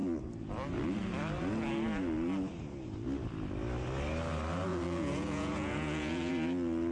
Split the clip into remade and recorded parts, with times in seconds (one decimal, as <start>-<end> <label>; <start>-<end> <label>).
0.0-4.7 recorded; 4.7-6.3 remade; 6.3-6.9 recorded